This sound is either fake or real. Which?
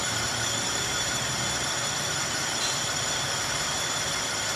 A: real